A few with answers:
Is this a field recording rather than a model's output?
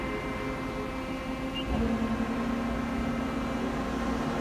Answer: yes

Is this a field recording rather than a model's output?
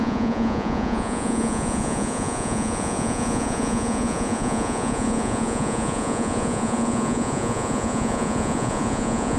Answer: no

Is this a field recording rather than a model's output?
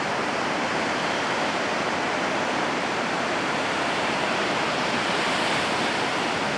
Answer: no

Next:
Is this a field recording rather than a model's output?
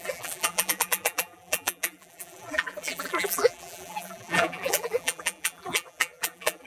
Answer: no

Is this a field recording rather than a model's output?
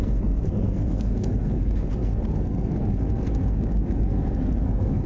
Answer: no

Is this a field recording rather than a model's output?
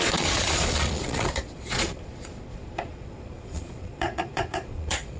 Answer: no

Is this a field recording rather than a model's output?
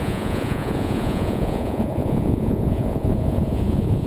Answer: no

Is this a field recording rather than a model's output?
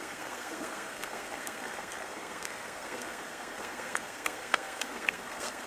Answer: no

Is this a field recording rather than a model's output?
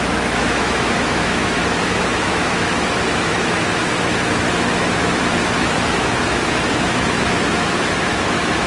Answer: no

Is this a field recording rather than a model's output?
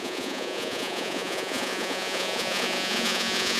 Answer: no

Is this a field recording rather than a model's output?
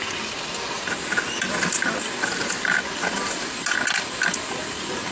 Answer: yes